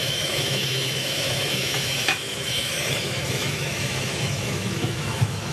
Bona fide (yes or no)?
no